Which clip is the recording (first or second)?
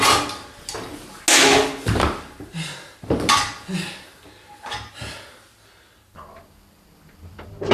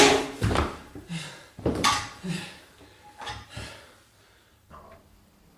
first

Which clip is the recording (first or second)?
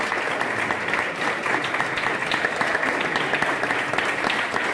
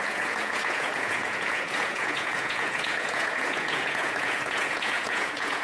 first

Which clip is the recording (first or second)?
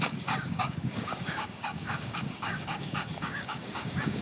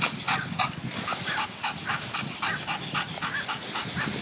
second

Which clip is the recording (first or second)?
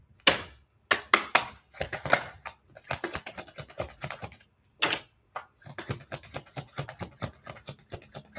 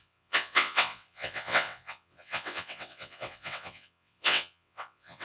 first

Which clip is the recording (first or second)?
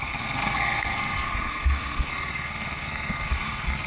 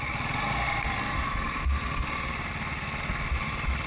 second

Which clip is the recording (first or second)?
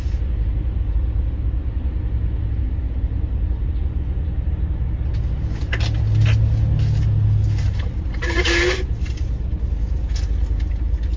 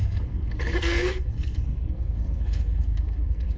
first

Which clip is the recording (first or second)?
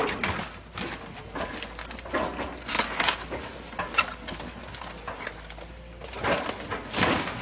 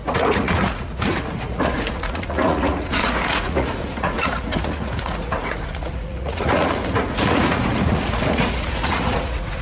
first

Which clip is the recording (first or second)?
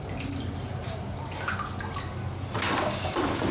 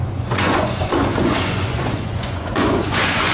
first